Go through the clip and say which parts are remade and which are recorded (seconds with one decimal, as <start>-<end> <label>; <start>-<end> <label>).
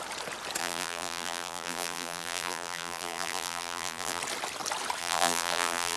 0.0-0.6 recorded; 0.6-4.2 remade; 4.2-5.0 recorded; 5.0-6.0 remade